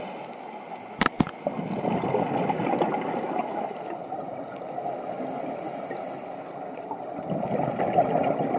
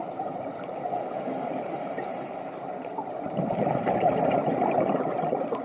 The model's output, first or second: second